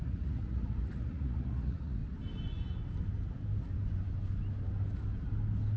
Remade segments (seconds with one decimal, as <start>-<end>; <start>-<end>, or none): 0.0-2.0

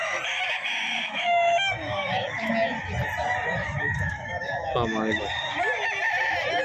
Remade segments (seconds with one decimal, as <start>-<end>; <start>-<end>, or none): 0.6-2.5; 3.6-5.2

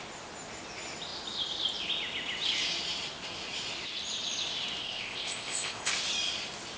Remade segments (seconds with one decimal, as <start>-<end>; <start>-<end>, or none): 4.8-5.9